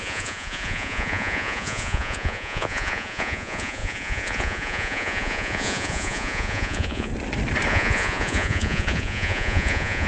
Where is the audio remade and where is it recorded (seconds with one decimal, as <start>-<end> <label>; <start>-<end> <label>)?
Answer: 0.0-7.1 remade; 7.1-7.7 recorded; 7.7-10.1 remade